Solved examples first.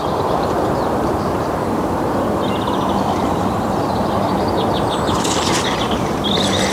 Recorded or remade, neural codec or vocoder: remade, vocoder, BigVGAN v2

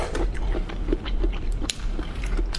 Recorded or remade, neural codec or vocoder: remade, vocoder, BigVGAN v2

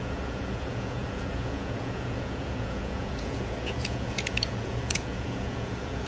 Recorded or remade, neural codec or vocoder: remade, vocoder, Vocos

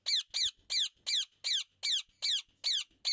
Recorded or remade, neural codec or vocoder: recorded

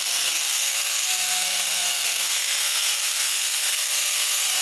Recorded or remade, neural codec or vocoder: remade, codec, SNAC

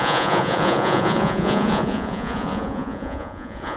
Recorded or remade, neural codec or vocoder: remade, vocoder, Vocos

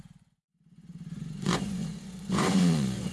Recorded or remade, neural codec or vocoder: remade, vocoder, Vocos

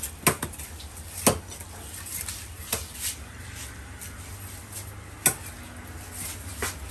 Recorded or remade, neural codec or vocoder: recorded